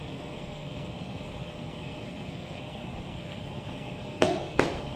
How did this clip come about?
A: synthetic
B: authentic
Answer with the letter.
A